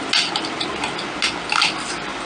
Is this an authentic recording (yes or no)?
yes